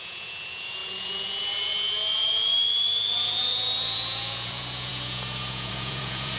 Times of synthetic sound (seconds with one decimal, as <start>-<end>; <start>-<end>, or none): 0.0-6.4